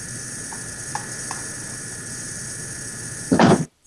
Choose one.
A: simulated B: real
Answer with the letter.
A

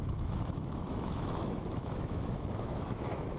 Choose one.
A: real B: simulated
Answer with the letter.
B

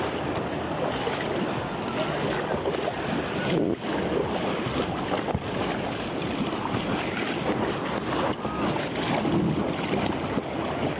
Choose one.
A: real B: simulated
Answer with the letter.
A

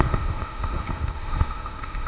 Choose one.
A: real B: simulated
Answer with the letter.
B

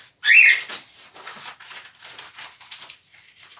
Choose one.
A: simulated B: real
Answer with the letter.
B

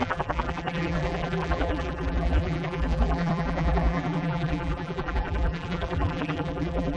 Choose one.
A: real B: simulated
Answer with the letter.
B